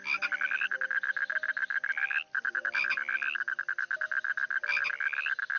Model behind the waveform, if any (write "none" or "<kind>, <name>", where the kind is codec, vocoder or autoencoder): none